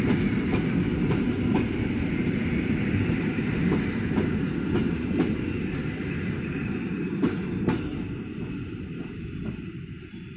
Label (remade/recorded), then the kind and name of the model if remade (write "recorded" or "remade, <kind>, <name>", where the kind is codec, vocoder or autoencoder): recorded